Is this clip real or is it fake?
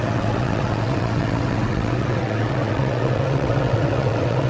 fake